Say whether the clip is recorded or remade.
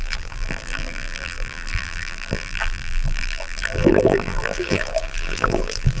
remade